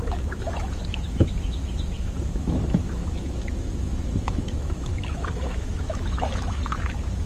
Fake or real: fake